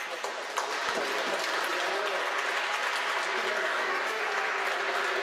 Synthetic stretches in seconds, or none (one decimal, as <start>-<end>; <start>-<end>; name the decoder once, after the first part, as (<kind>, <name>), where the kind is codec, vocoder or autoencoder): 3.6-4.2 (codec, DAC)